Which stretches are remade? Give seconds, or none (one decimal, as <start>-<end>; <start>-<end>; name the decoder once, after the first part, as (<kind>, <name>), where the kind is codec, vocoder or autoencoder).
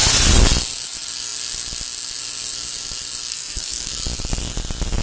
3.3-3.9 (codec, SNAC)